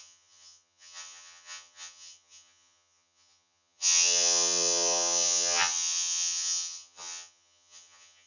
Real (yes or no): no